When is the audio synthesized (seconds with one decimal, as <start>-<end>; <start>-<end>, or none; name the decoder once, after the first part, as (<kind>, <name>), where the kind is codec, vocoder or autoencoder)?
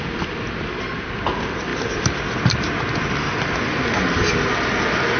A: none